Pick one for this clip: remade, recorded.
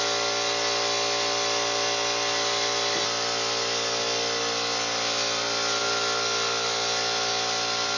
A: recorded